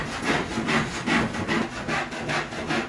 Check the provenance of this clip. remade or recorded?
recorded